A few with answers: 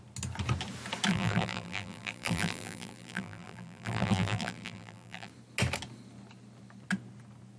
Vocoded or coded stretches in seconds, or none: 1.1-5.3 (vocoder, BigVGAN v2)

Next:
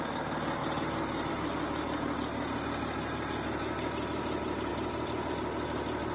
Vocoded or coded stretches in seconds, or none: 0.6-1.3 (vocoder, BigVGAN v2); 4.7-5.3

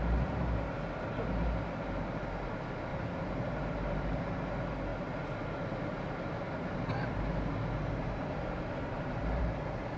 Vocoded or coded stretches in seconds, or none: 2.9-4.4 (vocoder, BigVGAN v2)

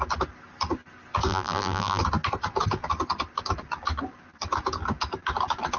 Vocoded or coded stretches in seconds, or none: 1.3-2.0 (vocoder, BigVGAN v2)